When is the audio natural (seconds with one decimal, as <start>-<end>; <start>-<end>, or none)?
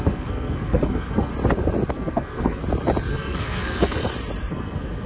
1.3-1.9; 2.6-3.1; 4.0-4.5